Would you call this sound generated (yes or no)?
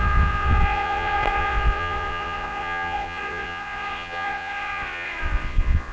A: yes